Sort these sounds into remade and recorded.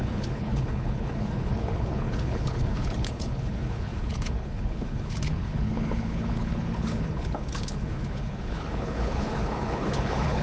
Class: remade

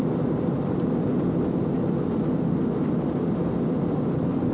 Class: recorded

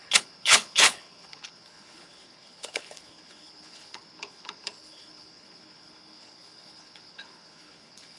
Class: remade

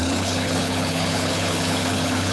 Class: remade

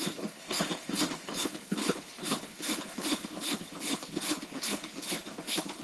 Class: remade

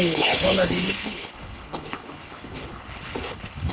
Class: remade